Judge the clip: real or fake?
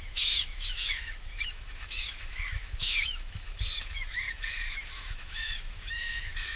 fake